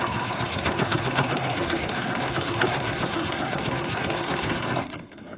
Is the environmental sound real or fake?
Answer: fake